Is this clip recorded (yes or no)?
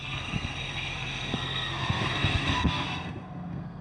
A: no